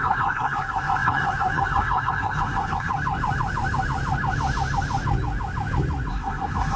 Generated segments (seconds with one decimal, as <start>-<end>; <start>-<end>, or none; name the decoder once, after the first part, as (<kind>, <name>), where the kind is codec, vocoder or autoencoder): 0.0-2.9 (codec, SNAC); 6.1-6.8